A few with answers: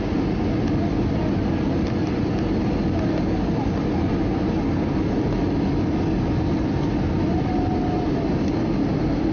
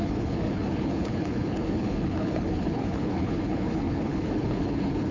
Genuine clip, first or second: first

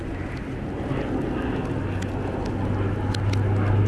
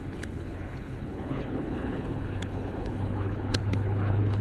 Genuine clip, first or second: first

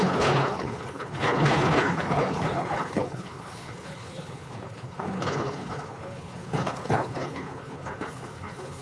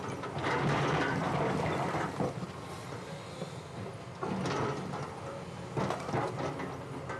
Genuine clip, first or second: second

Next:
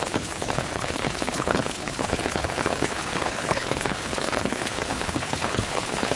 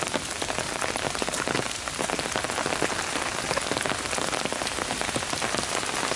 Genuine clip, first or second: second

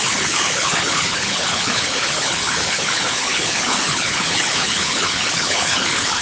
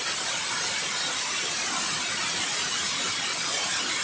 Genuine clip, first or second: second